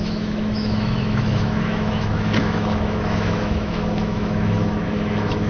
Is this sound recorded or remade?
remade